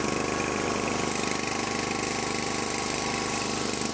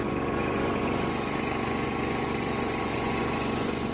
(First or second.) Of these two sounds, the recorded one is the first